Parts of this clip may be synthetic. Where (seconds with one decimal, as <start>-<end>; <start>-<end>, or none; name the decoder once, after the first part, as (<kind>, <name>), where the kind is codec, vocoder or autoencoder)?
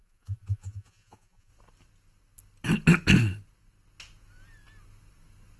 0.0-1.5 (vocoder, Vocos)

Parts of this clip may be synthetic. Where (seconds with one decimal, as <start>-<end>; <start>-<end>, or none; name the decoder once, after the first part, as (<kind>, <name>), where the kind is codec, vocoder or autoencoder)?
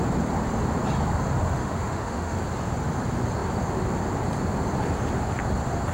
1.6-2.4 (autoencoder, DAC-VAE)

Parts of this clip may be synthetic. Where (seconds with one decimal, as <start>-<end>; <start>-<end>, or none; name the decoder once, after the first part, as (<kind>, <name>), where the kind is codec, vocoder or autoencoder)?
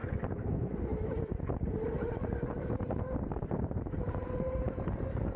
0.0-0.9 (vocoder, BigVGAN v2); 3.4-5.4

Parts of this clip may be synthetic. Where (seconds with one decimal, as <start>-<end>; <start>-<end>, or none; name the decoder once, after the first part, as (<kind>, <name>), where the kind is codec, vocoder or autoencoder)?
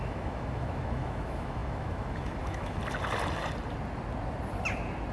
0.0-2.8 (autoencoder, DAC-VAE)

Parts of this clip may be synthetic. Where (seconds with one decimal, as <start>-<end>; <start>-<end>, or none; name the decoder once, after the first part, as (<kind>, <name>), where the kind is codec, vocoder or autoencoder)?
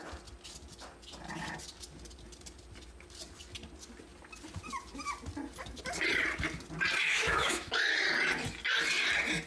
7.0-7.7 (autoencoder, DAC-VAE)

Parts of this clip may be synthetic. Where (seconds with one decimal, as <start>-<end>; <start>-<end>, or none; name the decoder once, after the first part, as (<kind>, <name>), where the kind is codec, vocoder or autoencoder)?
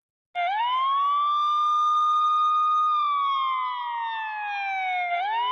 none